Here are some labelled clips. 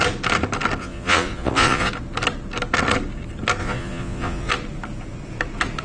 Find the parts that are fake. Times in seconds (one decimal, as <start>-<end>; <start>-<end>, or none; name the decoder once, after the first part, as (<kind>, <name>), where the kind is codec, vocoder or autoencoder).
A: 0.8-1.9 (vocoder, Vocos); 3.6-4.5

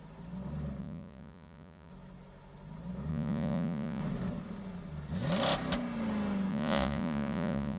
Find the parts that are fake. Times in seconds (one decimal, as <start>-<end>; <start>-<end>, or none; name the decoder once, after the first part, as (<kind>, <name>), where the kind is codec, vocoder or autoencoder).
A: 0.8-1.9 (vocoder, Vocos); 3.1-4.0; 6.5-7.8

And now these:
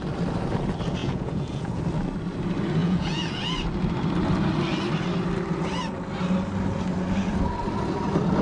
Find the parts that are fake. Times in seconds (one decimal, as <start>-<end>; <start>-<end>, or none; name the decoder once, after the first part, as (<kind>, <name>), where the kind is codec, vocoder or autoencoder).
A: 1.0-1.8 (vocoder, Vocos); 2.8-3.5

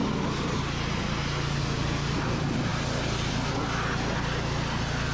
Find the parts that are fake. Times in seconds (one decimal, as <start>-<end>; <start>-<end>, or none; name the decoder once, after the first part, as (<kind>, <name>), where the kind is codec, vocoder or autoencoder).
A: none

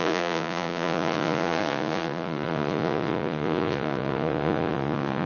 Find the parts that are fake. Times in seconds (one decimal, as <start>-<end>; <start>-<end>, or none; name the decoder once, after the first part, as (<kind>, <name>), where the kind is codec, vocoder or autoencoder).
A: 0.0-5.3 (vocoder, Vocos)

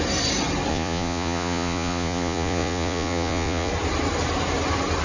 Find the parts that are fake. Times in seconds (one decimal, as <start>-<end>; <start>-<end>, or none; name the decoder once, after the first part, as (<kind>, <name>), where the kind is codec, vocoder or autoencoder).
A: 0.7-3.7 (vocoder, Vocos)

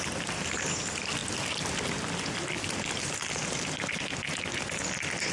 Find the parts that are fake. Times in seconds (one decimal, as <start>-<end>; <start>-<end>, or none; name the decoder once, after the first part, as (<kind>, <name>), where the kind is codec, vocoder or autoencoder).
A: none